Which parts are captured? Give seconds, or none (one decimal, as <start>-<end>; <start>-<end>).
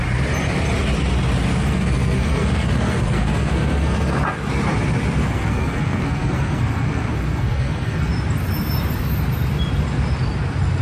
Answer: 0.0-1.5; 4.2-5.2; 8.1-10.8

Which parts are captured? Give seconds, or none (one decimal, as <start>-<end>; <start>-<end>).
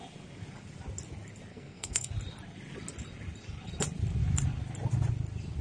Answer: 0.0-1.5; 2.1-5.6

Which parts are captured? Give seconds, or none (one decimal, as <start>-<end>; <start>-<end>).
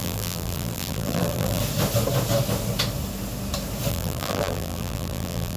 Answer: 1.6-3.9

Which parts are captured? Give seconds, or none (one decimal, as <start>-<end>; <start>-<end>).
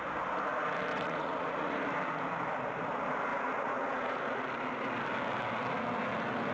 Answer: 0.0-0.9; 1.8-3.3; 4.2-6.5